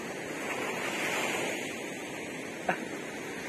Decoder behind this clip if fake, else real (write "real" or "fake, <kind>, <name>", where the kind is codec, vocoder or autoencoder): real